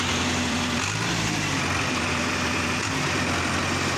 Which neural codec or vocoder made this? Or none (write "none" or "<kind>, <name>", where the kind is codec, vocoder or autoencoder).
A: vocoder, BigVGAN v2